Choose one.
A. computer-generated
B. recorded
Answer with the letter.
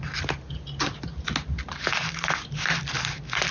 B